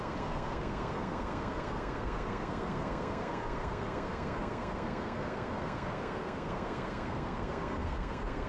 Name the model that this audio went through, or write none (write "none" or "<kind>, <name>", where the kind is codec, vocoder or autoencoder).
codec, SNAC